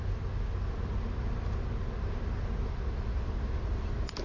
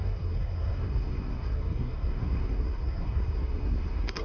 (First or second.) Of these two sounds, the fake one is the second